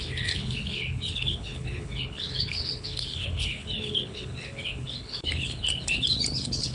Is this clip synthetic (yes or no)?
yes